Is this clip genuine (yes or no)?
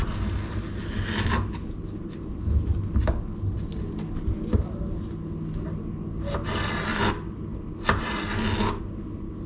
yes